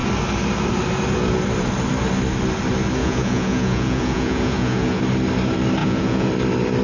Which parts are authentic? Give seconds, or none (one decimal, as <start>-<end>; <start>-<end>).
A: 0.0-3.0; 5.0-5.8; 6.3-6.8